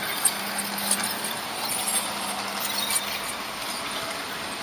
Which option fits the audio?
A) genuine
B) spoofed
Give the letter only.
A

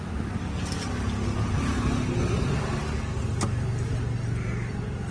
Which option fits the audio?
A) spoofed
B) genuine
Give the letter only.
B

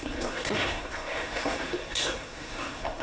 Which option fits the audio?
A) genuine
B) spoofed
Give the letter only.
B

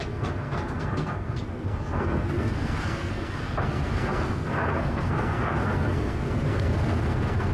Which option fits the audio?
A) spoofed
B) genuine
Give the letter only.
A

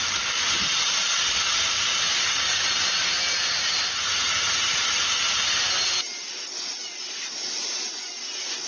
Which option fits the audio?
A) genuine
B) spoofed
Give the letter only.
A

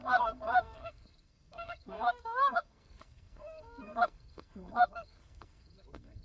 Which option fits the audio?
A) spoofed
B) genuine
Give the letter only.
A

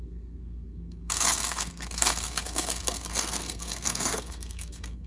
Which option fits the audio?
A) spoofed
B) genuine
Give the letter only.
A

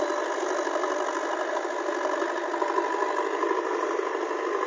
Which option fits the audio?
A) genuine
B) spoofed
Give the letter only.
A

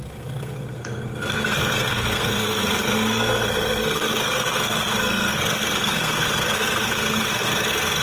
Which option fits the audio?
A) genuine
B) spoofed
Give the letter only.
B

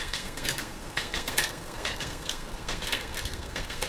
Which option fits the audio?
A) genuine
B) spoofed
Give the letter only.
B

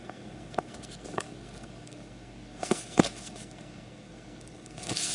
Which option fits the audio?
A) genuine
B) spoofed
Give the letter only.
B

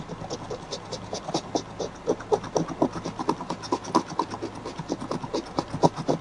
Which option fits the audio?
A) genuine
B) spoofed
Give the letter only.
A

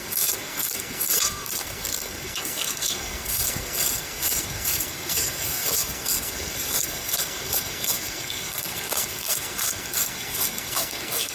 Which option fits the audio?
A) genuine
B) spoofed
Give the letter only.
B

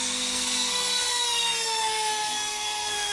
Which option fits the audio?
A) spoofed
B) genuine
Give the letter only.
A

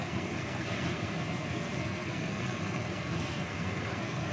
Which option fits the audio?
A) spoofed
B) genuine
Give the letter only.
A